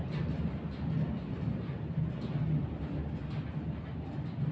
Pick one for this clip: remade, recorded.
recorded